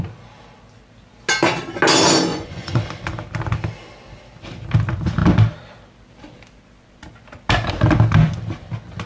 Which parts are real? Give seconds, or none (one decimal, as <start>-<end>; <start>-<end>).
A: 0.0-2.3; 2.8-9.1